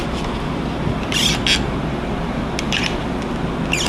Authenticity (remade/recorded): recorded